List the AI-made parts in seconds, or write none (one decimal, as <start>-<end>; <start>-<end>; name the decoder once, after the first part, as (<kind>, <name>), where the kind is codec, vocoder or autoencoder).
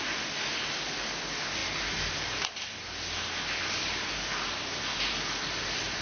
none